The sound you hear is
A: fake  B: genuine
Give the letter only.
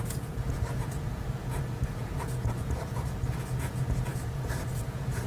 A